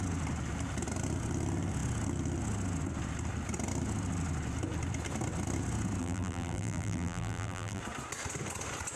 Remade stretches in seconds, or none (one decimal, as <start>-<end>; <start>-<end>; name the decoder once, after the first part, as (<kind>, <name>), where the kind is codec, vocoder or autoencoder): 6.0-7.8 (vocoder, BigVGAN v2)